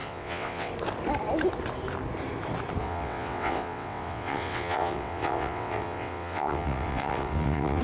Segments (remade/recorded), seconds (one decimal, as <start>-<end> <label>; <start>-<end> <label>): 0.0-0.7 remade; 0.7-2.8 recorded; 2.8-7.8 remade